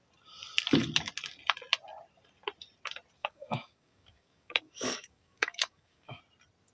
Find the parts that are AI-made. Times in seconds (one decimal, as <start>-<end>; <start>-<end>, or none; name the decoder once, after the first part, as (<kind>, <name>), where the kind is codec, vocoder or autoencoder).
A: 3.2-6.2 (codec, DAC)